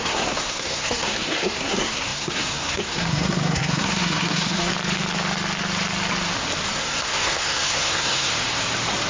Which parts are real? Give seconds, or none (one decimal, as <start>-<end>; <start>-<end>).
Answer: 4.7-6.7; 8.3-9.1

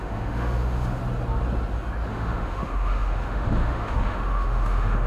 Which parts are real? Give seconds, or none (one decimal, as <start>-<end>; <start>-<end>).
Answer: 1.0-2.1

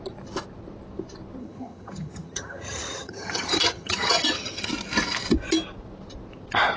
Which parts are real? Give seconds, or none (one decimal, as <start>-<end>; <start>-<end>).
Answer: 0.0-1.4; 4.7-6.8